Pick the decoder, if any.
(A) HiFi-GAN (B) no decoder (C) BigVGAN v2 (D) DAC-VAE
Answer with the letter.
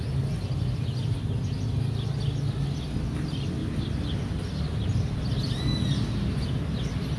B